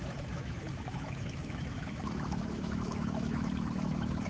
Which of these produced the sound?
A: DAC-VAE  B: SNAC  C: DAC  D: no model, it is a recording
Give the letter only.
A